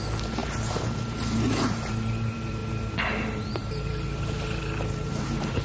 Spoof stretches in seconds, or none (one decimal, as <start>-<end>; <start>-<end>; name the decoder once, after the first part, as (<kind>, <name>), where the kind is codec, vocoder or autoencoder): 0.0-2.6 (vocoder, BigVGAN v2); 3.4-5.6